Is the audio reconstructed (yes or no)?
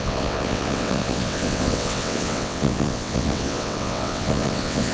yes